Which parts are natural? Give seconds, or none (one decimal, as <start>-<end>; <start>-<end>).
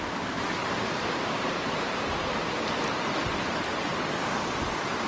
0.0-0.6; 2.5-5.1